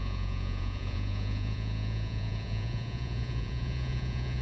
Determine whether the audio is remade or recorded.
remade